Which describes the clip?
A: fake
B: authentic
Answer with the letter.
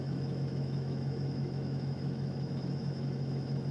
A